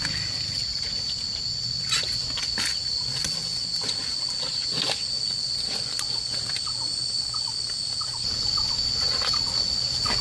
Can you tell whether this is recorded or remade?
recorded